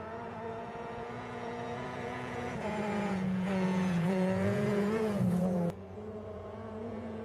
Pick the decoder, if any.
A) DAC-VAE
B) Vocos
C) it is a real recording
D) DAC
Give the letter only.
B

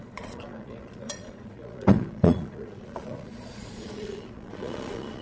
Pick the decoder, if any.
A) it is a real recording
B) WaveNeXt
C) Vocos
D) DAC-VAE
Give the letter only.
C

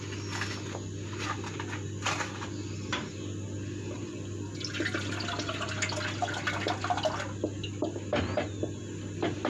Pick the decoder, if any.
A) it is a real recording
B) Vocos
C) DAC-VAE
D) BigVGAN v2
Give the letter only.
A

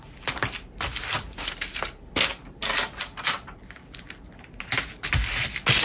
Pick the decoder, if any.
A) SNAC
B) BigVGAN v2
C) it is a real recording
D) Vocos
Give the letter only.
C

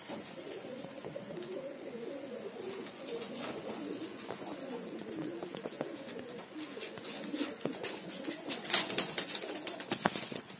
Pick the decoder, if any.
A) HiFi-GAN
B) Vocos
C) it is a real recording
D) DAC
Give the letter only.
B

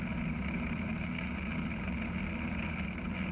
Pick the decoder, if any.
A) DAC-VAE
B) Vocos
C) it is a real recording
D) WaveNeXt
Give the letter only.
C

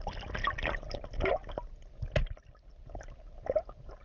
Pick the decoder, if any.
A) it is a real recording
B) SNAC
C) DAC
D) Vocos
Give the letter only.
A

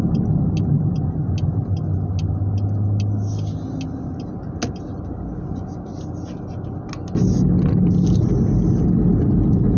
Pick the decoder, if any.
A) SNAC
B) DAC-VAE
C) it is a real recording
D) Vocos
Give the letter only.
C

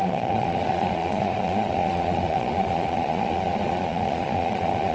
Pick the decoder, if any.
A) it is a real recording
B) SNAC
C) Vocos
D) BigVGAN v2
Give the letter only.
C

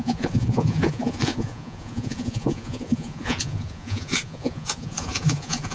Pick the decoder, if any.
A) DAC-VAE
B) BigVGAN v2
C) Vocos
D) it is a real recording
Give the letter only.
C